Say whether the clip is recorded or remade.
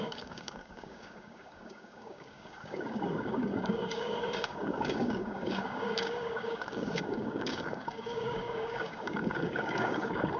remade